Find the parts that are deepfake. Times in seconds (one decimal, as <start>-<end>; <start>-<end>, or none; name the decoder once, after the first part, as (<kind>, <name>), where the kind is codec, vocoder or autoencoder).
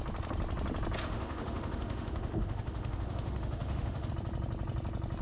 1.0-4.1 (autoencoder, DAC-VAE)